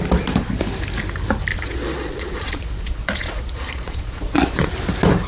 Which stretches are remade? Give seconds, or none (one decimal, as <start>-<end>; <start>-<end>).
1.5-4.7